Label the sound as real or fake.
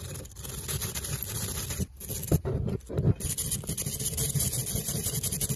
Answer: real